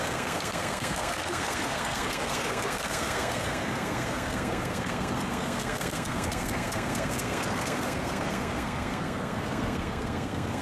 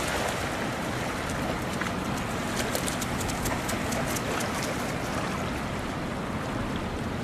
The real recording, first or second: second